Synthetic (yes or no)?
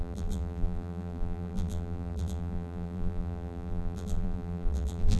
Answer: yes